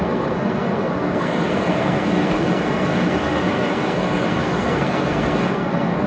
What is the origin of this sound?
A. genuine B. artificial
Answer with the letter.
B